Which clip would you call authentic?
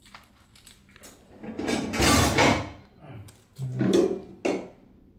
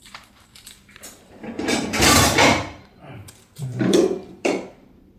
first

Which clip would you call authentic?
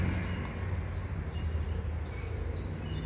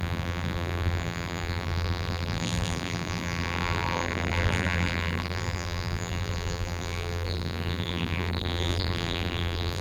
first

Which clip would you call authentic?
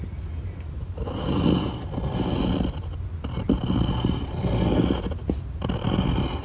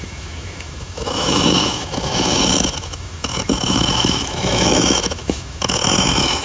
first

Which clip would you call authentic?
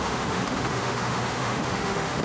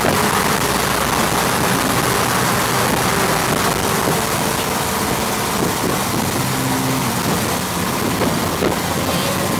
second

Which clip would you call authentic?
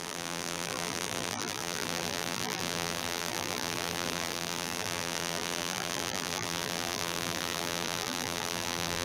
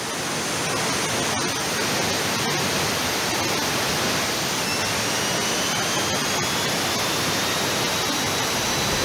second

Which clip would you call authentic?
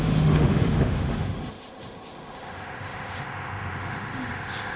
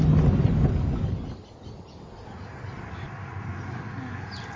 second